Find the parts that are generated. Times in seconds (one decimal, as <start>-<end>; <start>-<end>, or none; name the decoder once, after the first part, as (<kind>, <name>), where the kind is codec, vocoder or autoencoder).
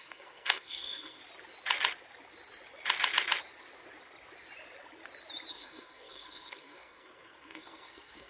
0.0-1.2 (codec, SNAC); 5.5-8.3